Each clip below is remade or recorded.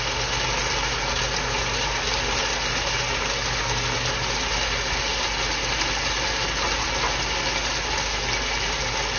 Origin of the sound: recorded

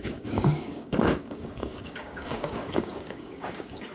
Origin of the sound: remade